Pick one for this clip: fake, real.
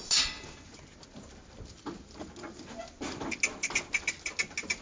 real